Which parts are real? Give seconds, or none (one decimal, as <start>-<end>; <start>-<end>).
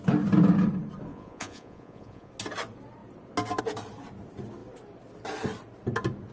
0.0-1.1; 2.3-6.3